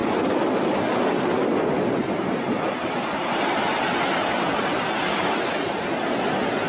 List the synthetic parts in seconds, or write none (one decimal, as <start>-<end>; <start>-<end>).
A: 2.0-6.0